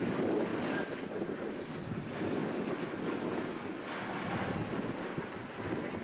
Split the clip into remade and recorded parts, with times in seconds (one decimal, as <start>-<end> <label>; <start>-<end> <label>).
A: 0.0-6.0 recorded